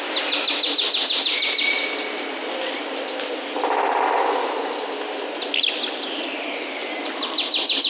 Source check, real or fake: real